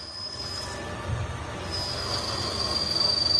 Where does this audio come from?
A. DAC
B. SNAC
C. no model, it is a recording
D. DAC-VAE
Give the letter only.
C